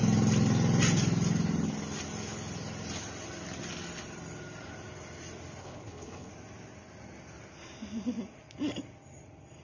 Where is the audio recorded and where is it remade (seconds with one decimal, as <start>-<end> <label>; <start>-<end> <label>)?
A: 0.0-5.6 recorded; 5.6-6.3 remade; 6.3-9.6 recorded